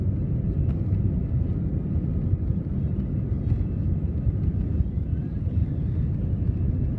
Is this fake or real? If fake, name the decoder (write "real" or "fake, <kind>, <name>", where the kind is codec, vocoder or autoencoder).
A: real